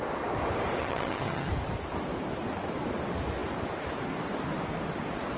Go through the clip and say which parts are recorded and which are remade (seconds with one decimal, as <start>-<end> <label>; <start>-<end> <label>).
0.0-0.8 recorded; 0.8-1.5 remade; 1.5-5.4 recorded